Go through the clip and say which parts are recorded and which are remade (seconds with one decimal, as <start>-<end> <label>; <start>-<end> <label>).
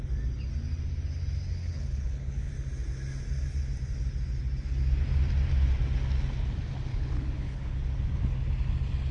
0.0-1.6 recorded; 1.6-2.5 remade; 2.5-6.9 recorded; 6.9-7.8 remade; 7.8-9.1 recorded